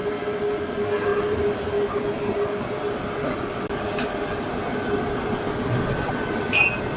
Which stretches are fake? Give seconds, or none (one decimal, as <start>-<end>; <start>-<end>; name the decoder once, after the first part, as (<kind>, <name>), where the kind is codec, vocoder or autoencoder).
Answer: none